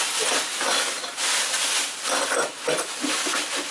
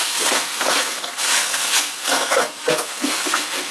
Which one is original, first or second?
first